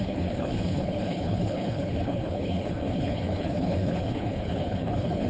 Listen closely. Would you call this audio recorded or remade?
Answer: remade